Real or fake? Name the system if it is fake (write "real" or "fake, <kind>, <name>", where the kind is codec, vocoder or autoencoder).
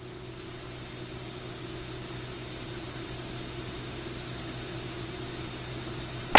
real